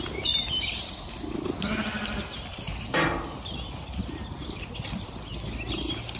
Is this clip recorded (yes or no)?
yes